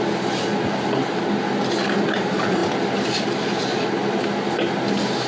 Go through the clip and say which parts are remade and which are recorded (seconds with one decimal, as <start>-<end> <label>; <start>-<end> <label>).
0.0-5.3 recorded